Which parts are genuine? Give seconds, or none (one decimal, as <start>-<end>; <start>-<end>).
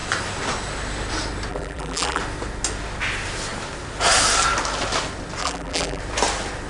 0.0-1.5; 2.2-5.4; 6.0-6.7